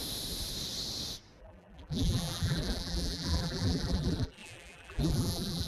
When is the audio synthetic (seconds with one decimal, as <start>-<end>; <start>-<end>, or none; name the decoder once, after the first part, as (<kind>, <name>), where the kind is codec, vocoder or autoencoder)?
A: 1.4-5.7 (vocoder, BigVGAN v2)